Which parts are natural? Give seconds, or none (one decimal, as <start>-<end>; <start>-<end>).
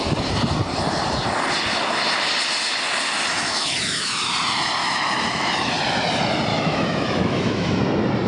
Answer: 0.0-3.3; 4.3-4.8; 5.7-6.5; 7.8-8.3